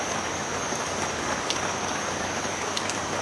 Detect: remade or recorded remade